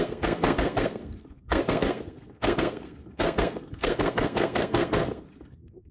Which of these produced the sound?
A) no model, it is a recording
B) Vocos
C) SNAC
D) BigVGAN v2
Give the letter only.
C